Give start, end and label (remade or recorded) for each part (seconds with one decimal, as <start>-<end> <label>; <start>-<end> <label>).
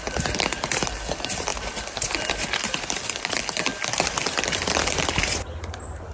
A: 0.0-3.7 remade; 3.7-4.3 recorded; 4.3-6.1 remade